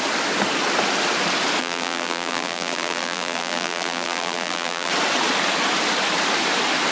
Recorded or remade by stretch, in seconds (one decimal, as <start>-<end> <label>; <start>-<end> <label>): 0.0-1.6 recorded; 1.6-4.9 remade; 4.9-6.9 recorded